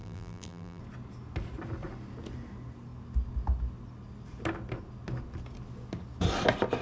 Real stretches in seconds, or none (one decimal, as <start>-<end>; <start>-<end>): 0.8-6.8